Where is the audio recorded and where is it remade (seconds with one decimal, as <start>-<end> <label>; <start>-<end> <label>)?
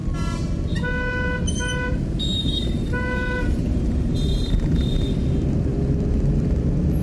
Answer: 0.0-2.3 recorded; 2.3-5.1 remade; 5.1-7.0 recorded